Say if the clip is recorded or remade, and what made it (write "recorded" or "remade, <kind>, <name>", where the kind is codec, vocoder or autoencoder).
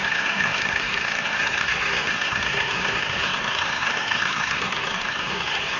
remade, codec, SNAC